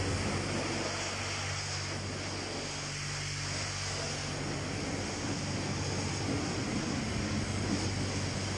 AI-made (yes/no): no